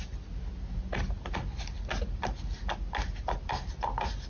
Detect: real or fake real